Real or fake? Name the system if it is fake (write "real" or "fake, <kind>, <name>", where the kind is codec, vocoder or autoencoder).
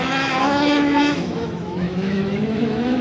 fake, autoencoder, DAC-VAE